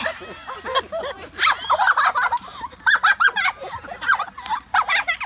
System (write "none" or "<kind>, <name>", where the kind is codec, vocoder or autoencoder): none